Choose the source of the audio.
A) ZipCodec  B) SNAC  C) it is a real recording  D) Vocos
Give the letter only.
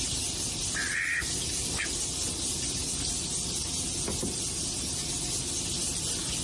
C